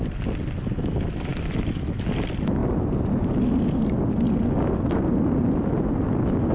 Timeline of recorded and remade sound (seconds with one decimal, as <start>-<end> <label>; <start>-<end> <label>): 0.0-6.5 recorded